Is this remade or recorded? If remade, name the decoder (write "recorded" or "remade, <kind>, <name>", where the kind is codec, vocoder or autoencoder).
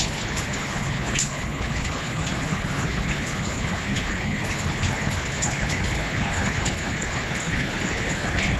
remade, codec, HILCodec